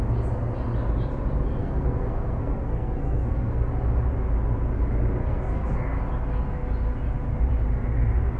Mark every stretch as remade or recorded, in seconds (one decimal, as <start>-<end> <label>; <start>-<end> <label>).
0.0-1.6 recorded; 1.6-3.7 remade; 3.7-5.2 recorded; 5.2-6.0 remade; 6.0-8.4 recorded